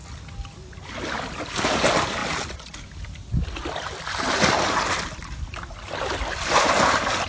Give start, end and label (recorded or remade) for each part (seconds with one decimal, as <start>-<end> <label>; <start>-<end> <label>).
0.0-7.3 recorded